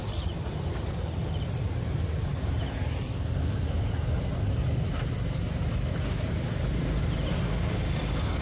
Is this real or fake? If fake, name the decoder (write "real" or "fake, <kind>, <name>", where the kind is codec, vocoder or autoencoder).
real